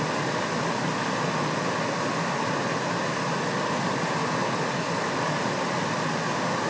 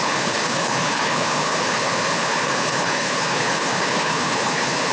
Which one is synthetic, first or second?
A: second